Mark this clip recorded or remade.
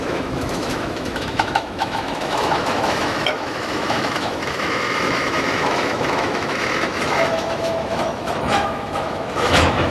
remade